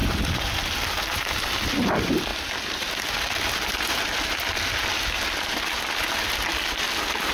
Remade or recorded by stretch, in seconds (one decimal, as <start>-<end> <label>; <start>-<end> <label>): 0.0-2.3 recorded; 2.3-4.2 remade; 4.2-7.3 recorded